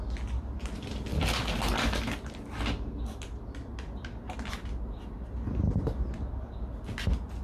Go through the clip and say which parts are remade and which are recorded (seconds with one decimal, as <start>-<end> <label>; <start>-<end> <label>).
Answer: 0.0-7.4 recorded